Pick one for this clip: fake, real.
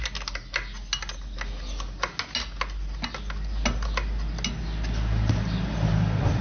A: real